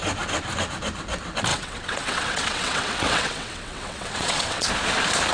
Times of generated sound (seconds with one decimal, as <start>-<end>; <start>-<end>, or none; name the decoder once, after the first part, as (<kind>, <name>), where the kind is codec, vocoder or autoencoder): 1.5-4.7 (vocoder, WaveNeXt)